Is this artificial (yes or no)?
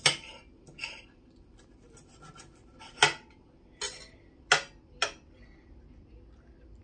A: no